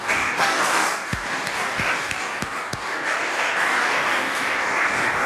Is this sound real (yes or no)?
no